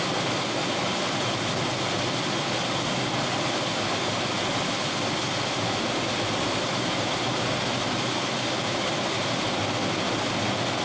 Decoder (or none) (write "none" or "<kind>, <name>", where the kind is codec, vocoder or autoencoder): none